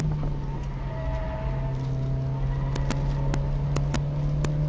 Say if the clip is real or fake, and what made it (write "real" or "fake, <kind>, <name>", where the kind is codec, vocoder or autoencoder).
real